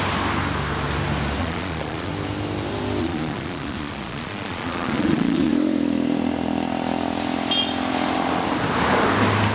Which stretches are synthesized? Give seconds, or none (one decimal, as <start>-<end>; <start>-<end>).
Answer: 1.4-2.1; 3.0-5.5